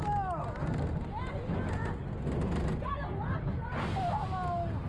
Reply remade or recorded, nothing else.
recorded